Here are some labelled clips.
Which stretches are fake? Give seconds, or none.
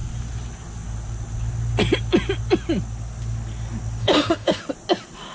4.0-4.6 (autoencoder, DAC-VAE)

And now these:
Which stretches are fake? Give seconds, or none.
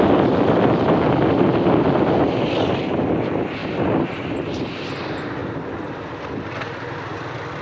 none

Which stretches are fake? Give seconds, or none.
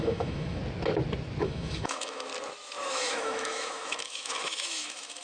0.0-0.6 (autoencoder, DAC-VAE); 1.4-2.3; 2.9-5.2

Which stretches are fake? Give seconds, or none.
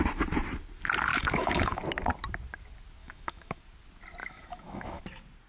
1.1-1.8 (autoencoder, DAC-VAE); 3.0-3.6; 4.2-5.0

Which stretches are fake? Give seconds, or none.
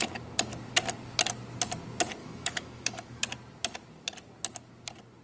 2.2-3.2 (autoencoder, DAC-VAE)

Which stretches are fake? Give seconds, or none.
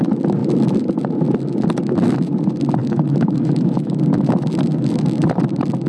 2.8-4.0 (autoencoder, DAC-VAE)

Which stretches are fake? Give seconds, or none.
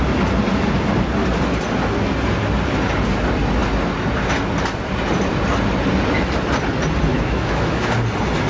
7.1-7.8 (autoencoder, DAC-VAE)